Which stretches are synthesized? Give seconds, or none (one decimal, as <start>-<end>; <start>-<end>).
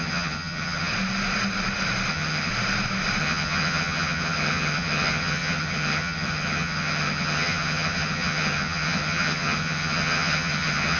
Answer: 0.0-0.9; 2.1-2.5; 3.2-11.0